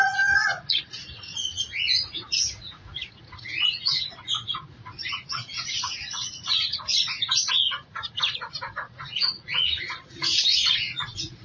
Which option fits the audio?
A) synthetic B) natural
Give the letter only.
A